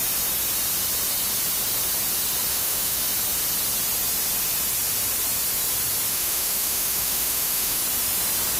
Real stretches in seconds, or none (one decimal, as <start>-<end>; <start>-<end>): 0.0-2.5; 3.0-6.1; 7.8-8.6